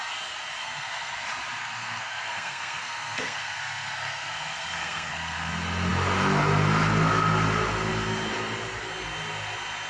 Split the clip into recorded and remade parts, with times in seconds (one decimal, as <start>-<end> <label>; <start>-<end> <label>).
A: 0.0-0.6 recorded; 0.6-1.1 remade; 1.1-1.6 recorded; 1.6-5.5 remade; 5.5-9.9 recorded